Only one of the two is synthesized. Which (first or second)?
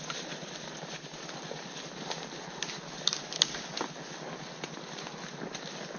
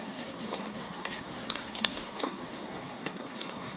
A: second